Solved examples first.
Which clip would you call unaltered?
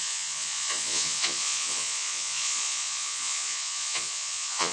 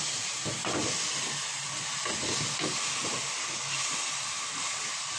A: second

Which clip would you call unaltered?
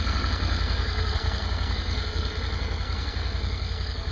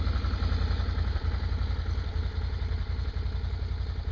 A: second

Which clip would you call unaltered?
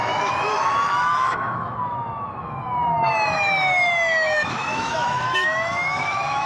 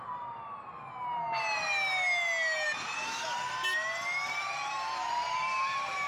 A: second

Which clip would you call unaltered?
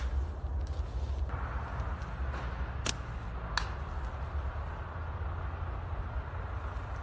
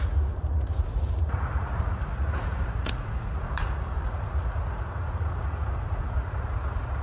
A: first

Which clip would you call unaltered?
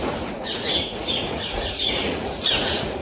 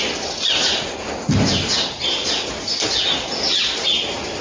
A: second